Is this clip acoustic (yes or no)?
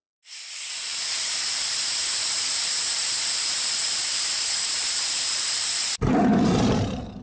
no